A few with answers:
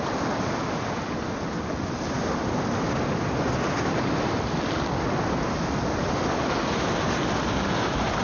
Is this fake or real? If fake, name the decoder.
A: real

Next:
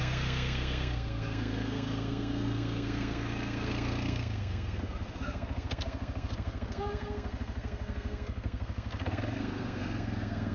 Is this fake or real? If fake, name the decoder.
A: fake, codec, SNAC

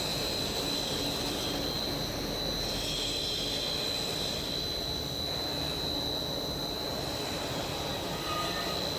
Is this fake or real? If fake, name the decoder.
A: real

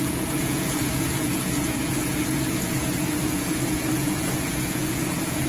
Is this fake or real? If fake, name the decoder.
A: fake, vocoder, Vocos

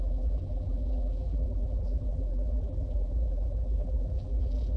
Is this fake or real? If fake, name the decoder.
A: fake, vocoder, BigVGAN v2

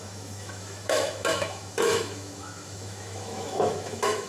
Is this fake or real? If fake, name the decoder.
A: fake, autoencoder, DAC-VAE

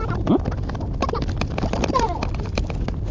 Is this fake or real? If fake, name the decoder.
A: real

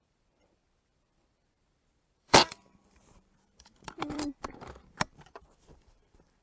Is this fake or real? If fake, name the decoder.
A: fake, vocoder, BigVGAN v2